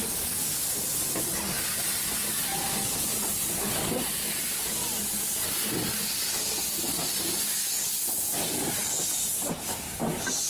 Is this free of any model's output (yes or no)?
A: yes